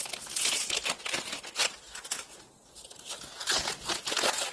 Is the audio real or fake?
real